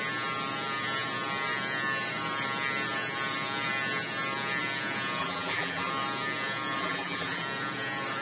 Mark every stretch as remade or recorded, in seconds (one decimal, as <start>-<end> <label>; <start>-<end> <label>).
0.0-5.2 recorded; 5.2-5.9 remade; 5.9-6.8 recorded; 6.8-7.4 remade; 7.4-8.2 recorded